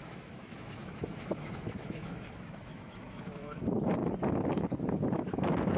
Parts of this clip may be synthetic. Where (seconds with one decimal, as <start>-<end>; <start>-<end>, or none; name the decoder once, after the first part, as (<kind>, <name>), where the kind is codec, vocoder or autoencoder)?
0.0-4.0 (autoencoder, DAC-VAE); 4.5-5.8